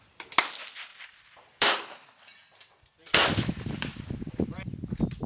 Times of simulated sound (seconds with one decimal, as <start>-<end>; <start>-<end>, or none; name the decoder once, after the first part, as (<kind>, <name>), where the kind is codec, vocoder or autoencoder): 0.9-4.1 (vocoder, BigVGAN v2)

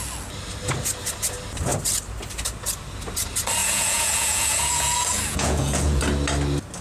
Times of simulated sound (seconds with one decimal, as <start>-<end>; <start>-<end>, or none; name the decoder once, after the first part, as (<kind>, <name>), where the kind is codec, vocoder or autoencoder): 3.6-6.0 (vocoder, Vocos)

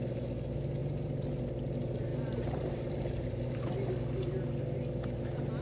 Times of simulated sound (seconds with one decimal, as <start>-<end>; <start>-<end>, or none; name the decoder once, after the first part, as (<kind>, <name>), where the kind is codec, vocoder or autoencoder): 0.8-1.4 (vocoder, BigVGAN v2); 2.1-3.7

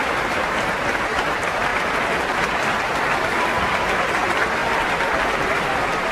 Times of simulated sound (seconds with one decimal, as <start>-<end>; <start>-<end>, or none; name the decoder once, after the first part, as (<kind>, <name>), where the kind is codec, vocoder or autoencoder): 0.0-0.8 (vocoder, BigVGAN v2)

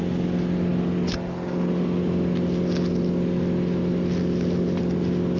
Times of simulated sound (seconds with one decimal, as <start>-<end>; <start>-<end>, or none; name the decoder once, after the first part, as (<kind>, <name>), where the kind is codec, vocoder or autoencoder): none

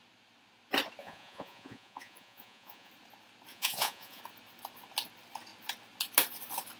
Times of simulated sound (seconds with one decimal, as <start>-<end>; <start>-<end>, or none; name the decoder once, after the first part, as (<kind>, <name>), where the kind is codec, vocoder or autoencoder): 1.0-2.9 (vocoder, Vocos); 3.5-4.2